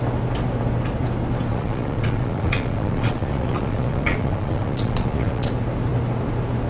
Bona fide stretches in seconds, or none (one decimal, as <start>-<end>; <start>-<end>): 0.0-1.5; 5.5-6.7